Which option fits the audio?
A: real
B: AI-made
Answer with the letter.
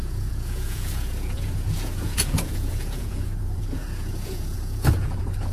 B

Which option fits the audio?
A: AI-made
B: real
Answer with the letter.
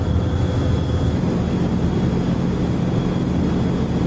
B